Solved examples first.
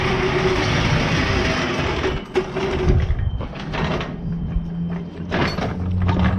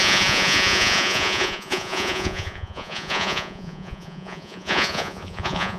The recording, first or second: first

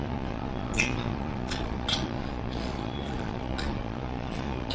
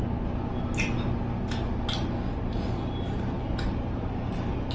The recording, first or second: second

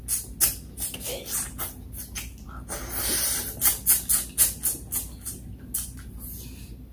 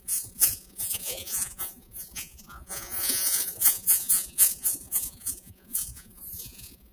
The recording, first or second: first